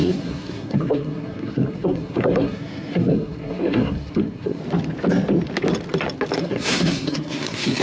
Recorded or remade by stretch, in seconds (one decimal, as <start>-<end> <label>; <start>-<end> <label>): 0.0-4.6 remade; 4.6-6.4 recorded; 6.4-7.8 remade